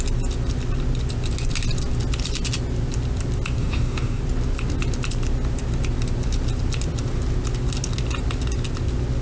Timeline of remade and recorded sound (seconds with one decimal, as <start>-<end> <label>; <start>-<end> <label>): 0.0-3.6 recorded; 3.6-4.2 remade; 4.2-9.2 recorded